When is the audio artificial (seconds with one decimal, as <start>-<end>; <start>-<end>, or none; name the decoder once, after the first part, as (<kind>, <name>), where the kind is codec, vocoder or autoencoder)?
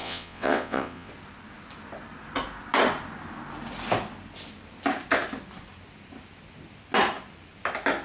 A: 0.0-1.1 (vocoder, WaveNeXt)